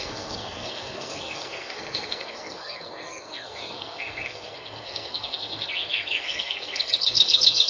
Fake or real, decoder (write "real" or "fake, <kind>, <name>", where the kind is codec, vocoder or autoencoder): fake, codec, SNAC